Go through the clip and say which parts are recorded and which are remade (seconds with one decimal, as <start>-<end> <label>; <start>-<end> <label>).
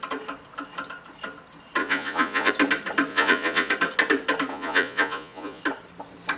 0.0-1.8 recorded; 1.8-2.5 remade; 2.5-3.1 recorded; 3.1-3.7 remade; 3.7-4.5 recorded; 4.5-5.6 remade; 5.6-6.4 recorded